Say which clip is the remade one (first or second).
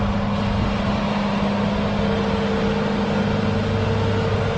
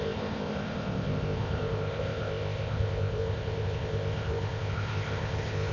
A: second